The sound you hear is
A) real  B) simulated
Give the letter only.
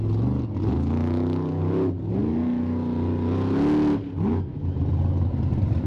A